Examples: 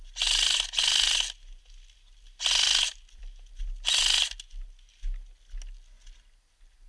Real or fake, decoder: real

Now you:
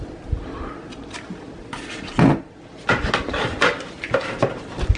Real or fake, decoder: real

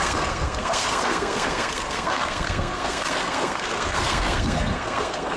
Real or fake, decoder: fake, codec, SNAC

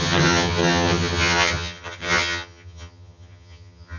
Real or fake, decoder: fake, vocoder, HiFi-GAN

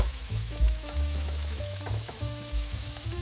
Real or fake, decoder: fake, autoencoder, DAC-VAE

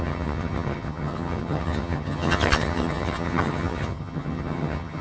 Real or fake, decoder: fake, vocoder, HiFi-GAN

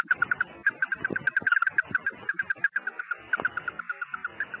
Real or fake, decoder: real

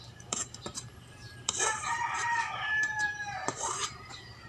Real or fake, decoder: fake, vocoder, BigVGAN v2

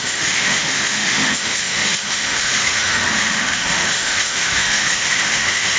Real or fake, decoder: fake, autoencoder, DAC-VAE